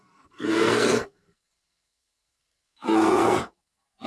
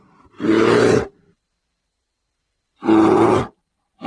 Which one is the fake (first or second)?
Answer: first